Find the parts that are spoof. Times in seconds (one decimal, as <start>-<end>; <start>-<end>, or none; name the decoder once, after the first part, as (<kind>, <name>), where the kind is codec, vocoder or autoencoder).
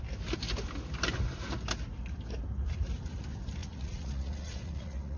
3.6-5.2 (vocoder, Vocos)